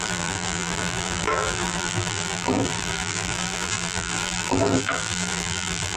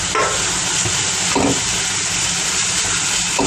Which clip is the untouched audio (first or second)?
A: second